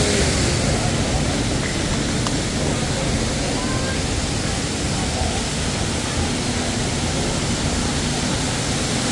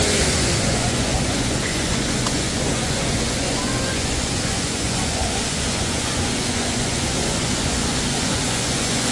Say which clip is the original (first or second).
first